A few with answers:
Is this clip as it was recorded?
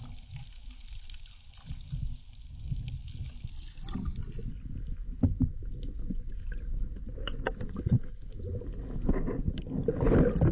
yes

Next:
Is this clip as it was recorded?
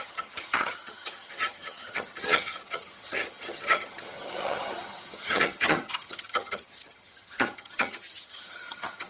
no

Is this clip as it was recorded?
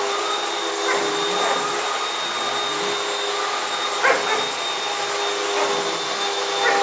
yes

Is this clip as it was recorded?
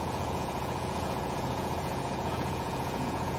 no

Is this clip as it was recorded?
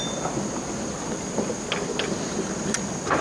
yes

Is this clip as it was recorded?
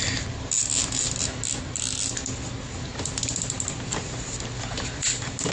yes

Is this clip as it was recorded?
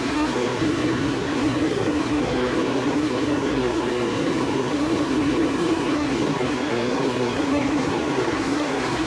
no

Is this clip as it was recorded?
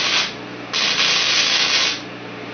yes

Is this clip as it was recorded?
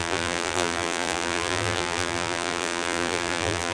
no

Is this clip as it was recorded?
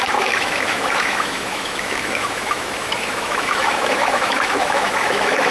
no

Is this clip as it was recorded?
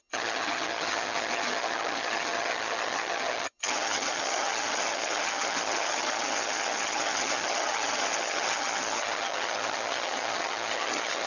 no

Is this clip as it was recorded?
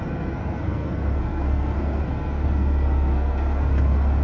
no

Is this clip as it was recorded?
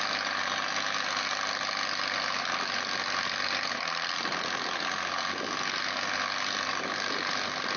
yes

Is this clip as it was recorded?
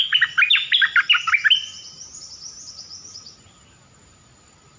yes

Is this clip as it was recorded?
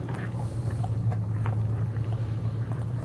yes